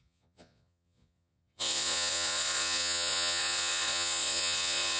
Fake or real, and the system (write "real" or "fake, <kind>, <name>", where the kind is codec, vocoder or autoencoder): fake, vocoder, Vocos